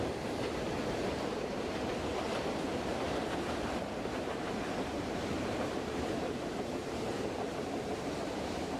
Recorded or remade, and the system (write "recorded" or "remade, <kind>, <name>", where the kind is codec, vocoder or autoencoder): remade, vocoder, BigVGAN v2